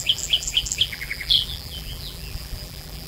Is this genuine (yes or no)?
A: no